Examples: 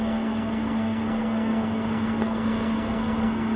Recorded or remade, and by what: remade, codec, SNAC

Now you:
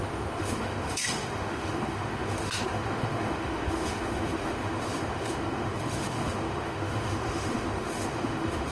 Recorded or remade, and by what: remade, autoencoder, DAC-VAE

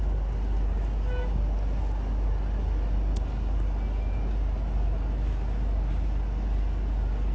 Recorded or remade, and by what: recorded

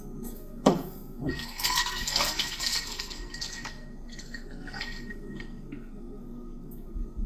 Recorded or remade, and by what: remade, codec, SNAC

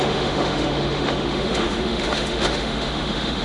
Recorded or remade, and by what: remade, autoencoder, DAC-VAE